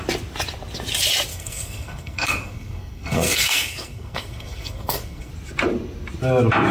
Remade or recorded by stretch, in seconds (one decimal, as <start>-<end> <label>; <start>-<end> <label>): 0.0-1.3 recorded; 1.3-5.3 remade; 5.3-6.7 recorded